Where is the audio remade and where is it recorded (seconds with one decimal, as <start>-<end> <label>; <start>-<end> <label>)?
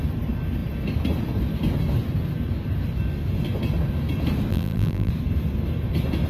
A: 0.0-4.5 recorded; 4.5-5.1 remade; 5.1-6.3 recorded